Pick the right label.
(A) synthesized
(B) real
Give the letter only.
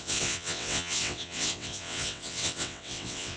A